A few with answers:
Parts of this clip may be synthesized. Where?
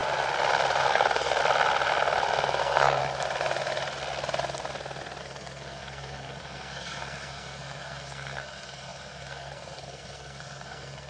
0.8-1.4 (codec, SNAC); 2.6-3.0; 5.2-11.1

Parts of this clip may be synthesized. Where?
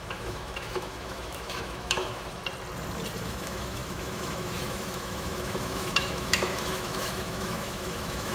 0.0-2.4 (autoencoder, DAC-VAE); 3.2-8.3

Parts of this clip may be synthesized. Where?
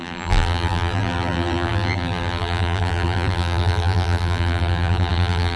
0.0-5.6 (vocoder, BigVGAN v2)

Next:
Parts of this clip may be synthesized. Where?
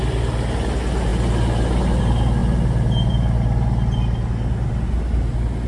none